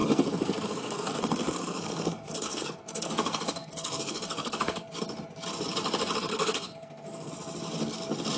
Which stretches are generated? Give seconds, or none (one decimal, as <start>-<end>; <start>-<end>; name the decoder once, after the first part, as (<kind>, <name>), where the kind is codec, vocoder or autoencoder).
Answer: 0.0-4.9 (codec, SNAC); 6.3-7.3